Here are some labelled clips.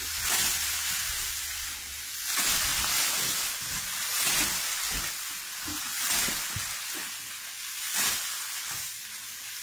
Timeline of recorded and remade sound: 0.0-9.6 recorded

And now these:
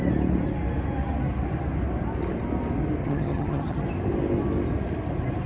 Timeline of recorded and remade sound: 0.0-3.0 recorded; 3.0-3.8 remade; 3.8-5.5 recorded

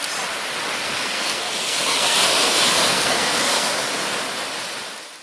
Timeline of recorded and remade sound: 0.0-0.8 recorded; 0.8-3.7 remade; 3.7-5.2 recorded

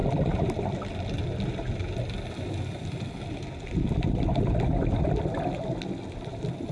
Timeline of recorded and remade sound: 0.0-6.7 recorded

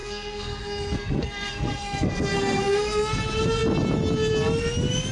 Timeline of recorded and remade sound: 0.0-3.1 remade; 3.1-5.1 recorded

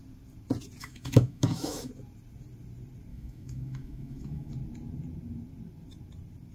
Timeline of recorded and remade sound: 0.0-0.8 recorded; 0.8-1.9 remade; 1.9-3.1 recorded; 3.1-4.5 remade; 4.5-6.5 recorded